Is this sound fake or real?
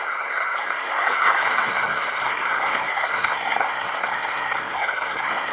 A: fake